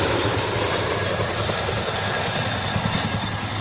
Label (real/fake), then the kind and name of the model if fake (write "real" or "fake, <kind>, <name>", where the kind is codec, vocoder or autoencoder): real